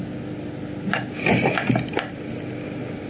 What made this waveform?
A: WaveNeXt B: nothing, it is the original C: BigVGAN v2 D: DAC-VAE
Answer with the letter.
B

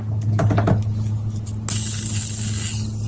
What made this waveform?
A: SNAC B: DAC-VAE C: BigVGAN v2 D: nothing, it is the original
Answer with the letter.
D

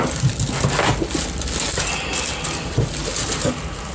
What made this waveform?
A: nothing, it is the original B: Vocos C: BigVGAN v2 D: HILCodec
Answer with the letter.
A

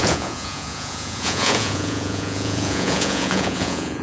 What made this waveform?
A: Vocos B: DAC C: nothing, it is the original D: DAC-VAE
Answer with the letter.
A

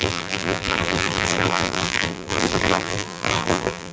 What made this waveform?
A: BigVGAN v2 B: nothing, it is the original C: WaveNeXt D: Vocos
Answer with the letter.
A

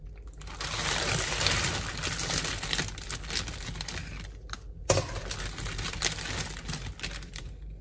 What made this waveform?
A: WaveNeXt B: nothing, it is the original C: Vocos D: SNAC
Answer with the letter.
B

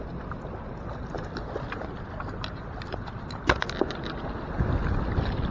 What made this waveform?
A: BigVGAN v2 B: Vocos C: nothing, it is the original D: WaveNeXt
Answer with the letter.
C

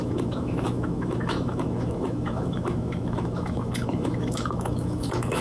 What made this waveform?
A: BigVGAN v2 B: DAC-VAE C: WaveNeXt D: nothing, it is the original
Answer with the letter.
B